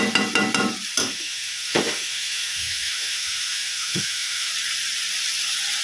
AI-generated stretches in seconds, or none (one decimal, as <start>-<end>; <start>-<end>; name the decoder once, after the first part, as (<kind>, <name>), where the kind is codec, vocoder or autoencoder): 1.0-4.5 (autoencoder, DAC-VAE)